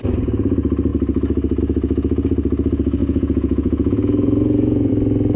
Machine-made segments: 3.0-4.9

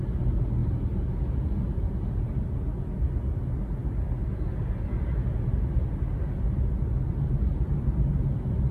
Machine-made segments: none

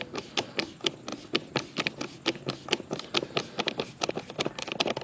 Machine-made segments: none

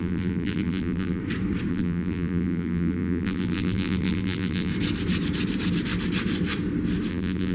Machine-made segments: 0.0-1.2; 1.7-4.7; 7.1-7.5

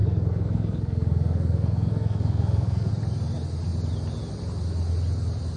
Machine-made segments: 0.0-2.9